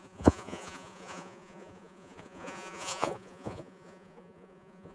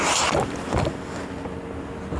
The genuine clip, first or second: second